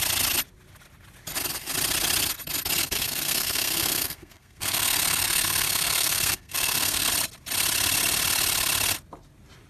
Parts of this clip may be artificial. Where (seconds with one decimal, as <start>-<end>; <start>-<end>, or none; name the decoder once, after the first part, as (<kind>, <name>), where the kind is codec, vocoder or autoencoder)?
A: 2.8-7.1 (codec, SNAC)